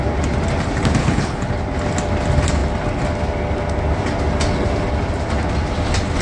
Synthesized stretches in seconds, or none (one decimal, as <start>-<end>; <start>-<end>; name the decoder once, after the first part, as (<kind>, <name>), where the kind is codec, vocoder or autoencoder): 1.0-1.5 (codec, HILCodec)